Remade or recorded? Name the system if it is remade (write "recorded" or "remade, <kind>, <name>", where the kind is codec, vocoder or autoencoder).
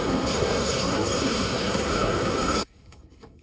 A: remade, codec, SNAC